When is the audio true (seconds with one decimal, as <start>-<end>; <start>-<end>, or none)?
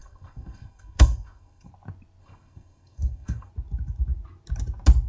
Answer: 1.7-2.2; 3.5-5.1